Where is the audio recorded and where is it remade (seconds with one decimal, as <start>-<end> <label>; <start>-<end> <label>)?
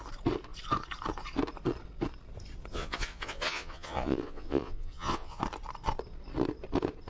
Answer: 0.0-2.7 recorded; 2.7-5.4 remade; 5.4-7.1 recorded